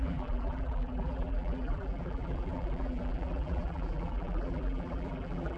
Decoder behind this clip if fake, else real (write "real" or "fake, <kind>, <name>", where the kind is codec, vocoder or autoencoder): fake, vocoder, BigVGAN v2